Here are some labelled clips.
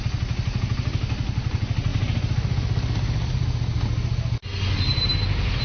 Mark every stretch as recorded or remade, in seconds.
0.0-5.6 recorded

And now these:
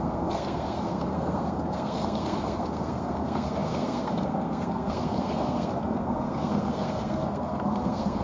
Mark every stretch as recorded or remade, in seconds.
0.0-8.2 remade

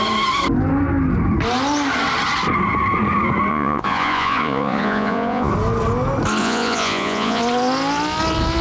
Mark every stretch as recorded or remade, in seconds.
0.0-3.5 recorded; 3.5-5.5 remade; 5.5-6.4 recorded; 6.4-7.4 remade; 7.4-8.6 recorded

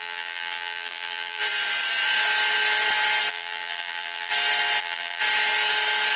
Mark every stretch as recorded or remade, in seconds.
0.0-1.4 remade; 1.4-3.3 recorded; 3.3-4.3 remade; 4.3-4.8 recorded; 4.8-5.2 remade; 5.2-6.2 recorded